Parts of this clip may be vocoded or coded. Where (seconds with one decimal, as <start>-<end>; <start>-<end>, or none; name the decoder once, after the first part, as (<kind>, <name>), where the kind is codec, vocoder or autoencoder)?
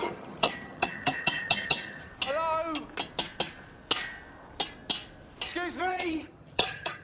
0.0-2.1 (vocoder, HiFi-GAN); 5.8-7.0